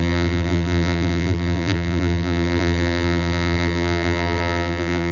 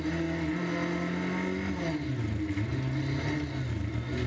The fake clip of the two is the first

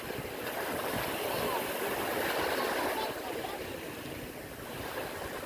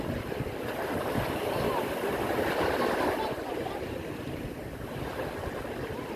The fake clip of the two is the second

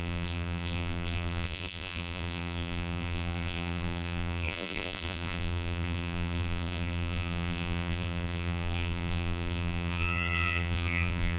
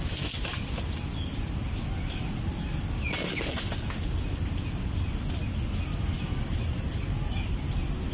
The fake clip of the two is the first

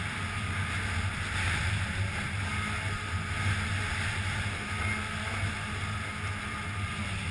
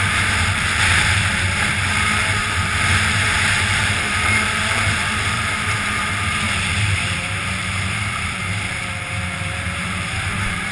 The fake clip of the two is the second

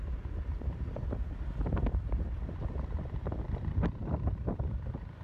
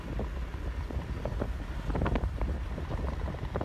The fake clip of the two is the first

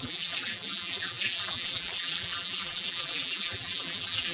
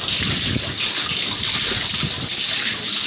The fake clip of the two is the first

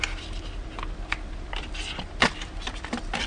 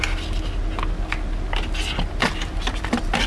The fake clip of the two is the first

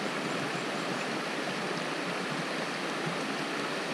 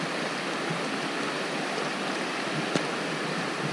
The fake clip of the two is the first